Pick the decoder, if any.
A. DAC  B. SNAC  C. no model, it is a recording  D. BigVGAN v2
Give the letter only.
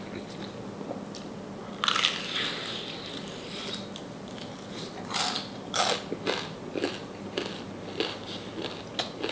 C